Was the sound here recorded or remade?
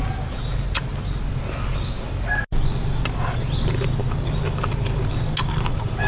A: recorded